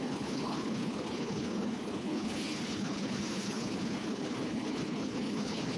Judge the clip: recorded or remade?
remade